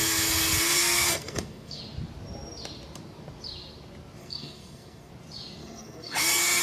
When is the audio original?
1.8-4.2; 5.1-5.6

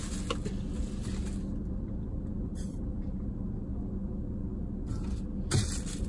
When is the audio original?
0.0-2.3; 3.2-6.1

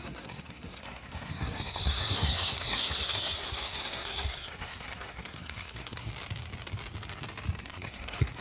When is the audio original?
6.1-7.6

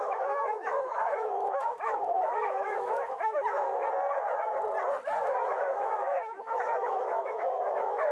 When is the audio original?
3.8-5.2

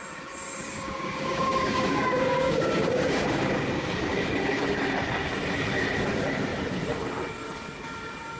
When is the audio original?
0.0-0.6; 4.6-8.4